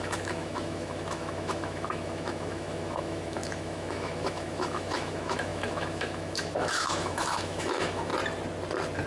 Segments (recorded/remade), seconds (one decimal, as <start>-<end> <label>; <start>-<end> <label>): 0.0-8.1 remade; 8.1-9.1 recorded